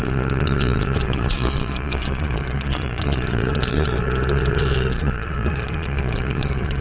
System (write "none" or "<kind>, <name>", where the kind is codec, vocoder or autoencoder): vocoder, Vocos